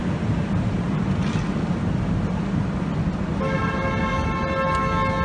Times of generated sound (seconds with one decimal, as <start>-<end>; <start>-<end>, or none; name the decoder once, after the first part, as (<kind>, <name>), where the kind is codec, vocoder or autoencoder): none